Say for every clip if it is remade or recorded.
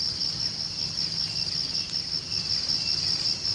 recorded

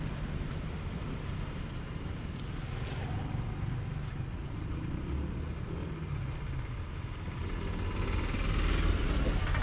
recorded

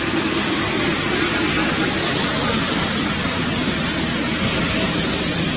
recorded